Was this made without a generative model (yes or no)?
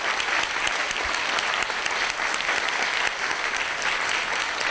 yes